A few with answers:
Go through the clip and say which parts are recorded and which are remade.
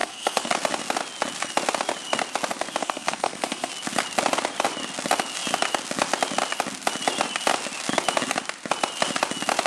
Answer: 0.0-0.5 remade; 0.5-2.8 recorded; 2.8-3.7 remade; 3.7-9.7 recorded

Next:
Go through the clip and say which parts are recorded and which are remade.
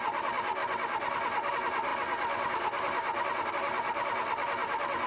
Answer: 0.0-5.1 recorded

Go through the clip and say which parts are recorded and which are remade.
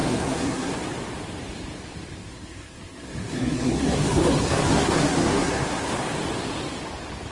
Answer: 0.0-0.8 remade; 0.8-2.2 recorded; 2.2-5.9 remade; 5.9-7.3 recorded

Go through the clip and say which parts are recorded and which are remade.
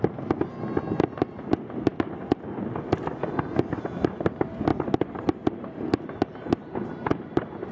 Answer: 0.0-7.7 recorded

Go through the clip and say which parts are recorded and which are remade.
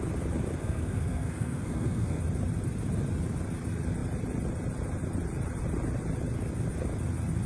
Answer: 0.0-0.6 recorded; 0.6-2.2 remade; 2.2-7.5 recorded